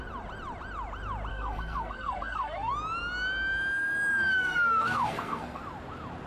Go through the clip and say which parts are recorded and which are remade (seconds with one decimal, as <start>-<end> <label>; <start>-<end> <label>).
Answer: 0.0-1.3 recorded; 1.3-2.7 remade; 2.7-4.1 recorded; 4.1-5.6 remade; 5.6-6.3 recorded